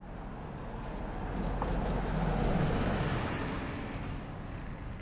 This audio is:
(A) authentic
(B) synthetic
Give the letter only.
A